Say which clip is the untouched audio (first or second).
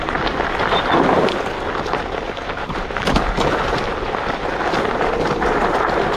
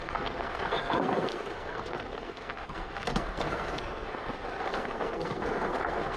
first